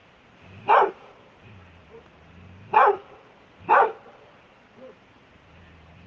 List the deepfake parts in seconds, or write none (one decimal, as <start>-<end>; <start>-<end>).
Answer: 0.0-6.1